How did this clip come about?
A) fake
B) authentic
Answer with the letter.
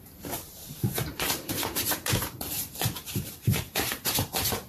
A